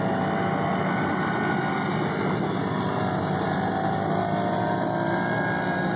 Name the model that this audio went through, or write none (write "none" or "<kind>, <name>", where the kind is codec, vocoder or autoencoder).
none